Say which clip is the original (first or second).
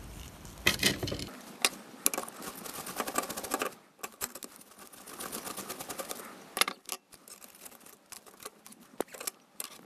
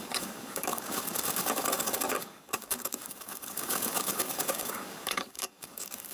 first